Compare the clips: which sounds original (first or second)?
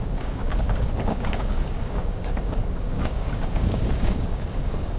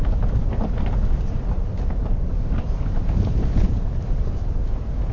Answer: second